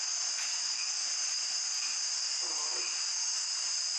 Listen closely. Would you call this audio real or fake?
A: real